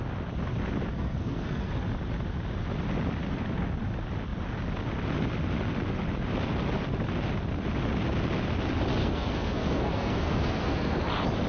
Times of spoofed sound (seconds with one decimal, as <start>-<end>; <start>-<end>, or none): 0.9-1.8; 9.0-11.0